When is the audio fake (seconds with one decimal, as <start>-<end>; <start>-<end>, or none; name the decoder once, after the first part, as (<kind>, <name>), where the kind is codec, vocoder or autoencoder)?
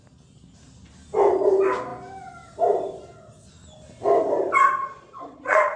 4.8-5.8 (vocoder, Vocos)